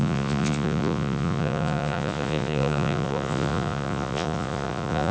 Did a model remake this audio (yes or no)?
yes